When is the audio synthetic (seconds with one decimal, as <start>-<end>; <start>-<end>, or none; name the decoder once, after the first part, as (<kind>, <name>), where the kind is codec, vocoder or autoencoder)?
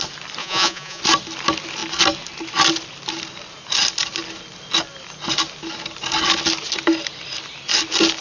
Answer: 0.4-1.0 (vocoder, Vocos)